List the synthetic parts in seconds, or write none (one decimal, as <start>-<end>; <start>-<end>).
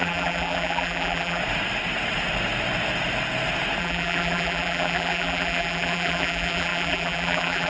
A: 0.0-1.4; 3.8-7.7